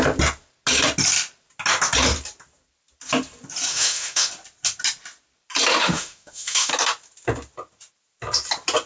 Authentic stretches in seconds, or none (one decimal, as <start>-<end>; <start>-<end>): 0.0-3.7; 4.3-5.7; 6.7-8.9